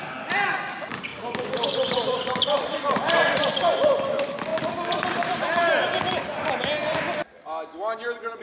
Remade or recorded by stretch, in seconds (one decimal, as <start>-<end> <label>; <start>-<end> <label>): 0.0-1.1 recorded; 1.1-3.4 remade; 3.4-8.4 recorded